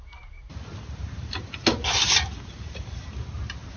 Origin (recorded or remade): recorded